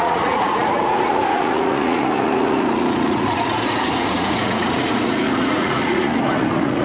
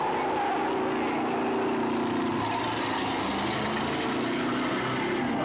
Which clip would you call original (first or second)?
second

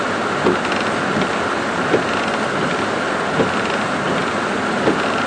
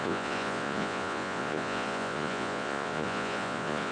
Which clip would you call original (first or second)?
first